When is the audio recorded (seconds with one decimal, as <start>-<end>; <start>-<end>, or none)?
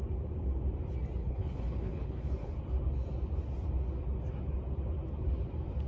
0.0-1.2; 2.5-5.9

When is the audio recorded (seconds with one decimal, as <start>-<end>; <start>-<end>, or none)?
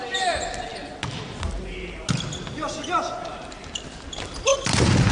0.0-5.1